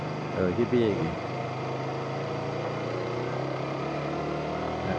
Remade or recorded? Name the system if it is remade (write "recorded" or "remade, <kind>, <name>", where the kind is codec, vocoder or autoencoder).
recorded